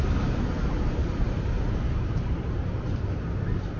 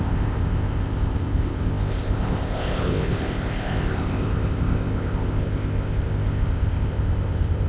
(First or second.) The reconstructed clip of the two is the second